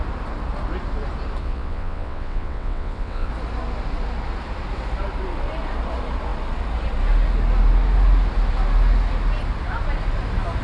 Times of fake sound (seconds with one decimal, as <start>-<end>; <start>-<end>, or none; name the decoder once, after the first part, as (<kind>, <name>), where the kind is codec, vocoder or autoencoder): 1.4-3.3 (vocoder, WaveNeXt)